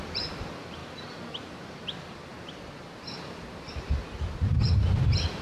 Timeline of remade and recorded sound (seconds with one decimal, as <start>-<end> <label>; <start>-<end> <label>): 0.0-0.8 remade; 0.8-1.5 recorded; 1.5-2.3 remade; 2.3-3.7 recorded; 3.7-5.4 remade